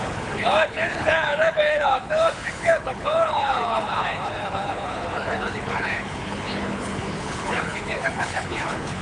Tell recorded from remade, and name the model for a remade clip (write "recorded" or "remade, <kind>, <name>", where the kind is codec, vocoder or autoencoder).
remade, codec, HILCodec